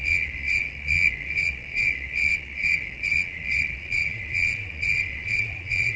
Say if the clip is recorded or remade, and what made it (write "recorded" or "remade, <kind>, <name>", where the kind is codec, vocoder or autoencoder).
remade, vocoder, Vocos